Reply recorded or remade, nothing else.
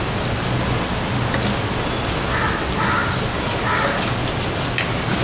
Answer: recorded